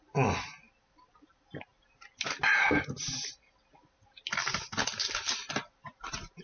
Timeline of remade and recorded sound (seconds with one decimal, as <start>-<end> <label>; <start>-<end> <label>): 0.0-6.4 recorded